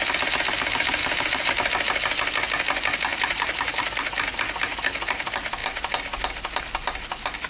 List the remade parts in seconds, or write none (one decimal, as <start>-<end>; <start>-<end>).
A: 1.0-1.5; 3.1-3.8